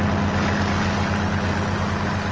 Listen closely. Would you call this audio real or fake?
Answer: real